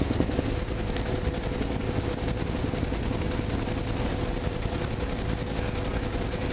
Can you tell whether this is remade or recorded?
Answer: recorded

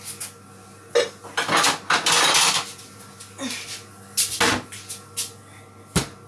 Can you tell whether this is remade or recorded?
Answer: recorded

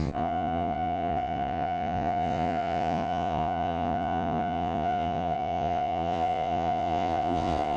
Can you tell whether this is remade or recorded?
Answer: remade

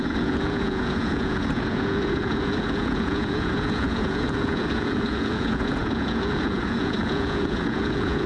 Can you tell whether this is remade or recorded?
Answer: remade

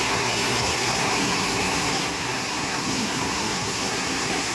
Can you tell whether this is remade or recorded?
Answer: remade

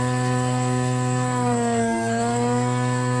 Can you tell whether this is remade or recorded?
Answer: remade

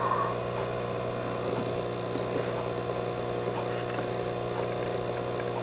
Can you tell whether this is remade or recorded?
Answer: recorded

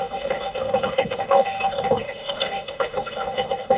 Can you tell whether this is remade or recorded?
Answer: remade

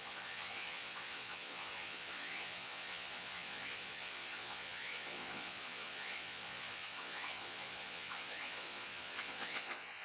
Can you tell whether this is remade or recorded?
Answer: remade